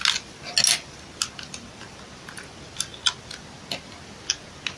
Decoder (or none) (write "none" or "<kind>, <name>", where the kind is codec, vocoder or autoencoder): none